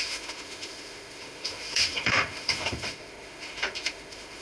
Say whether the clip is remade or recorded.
remade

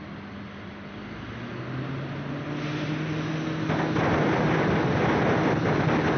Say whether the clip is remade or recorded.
recorded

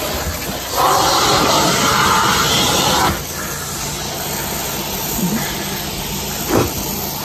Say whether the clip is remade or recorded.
recorded